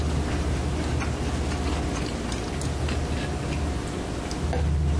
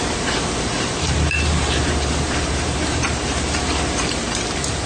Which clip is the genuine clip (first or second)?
first